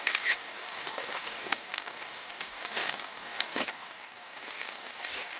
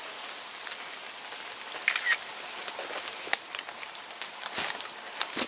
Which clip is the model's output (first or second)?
first